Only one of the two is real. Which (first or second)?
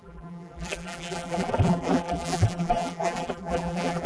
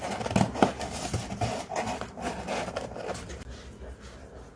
second